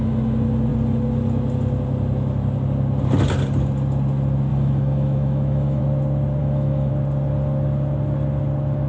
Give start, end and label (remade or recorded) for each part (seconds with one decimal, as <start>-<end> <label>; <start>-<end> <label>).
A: 0.0-4.5 recorded; 4.5-5.8 remade; 5.8-6.4 recorded; 6.4-6.9 remade; 6.9-8.9 recorded